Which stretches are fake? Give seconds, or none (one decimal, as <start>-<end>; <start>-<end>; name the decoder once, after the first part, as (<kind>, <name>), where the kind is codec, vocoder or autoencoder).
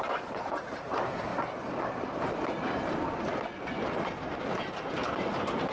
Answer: 0.0-1.3 (vocoder, BigVGAN v2); 4.7-5.7